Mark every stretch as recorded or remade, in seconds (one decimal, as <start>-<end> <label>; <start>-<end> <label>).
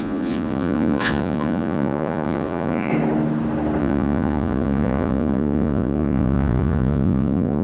0.0-2.9 remade; 2.9-3.8 recorded; 3.8-7.6 remade